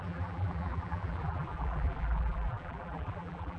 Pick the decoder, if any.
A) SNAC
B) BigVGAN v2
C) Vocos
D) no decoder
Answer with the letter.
B